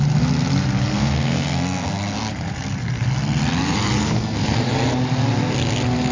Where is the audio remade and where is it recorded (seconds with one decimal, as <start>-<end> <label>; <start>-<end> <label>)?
0.0-0.9 recorded; 0.9-2.3 remade; 2.3-4.0 recorded; 4.0-4.6 remade; 4.6-6.1 recorded